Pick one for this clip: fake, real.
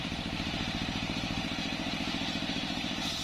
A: fake